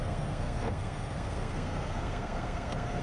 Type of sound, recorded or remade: remade